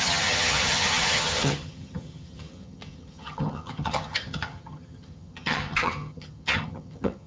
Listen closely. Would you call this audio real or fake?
fake